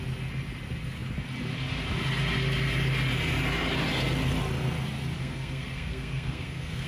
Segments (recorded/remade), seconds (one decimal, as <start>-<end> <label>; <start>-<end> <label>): 0.0-5.2 recorded; 5.2-6.9 remade